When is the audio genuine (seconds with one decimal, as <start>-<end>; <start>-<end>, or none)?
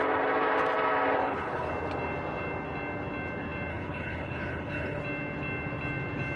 0.0-1.2; 1.7-3.7; 5.0-6.4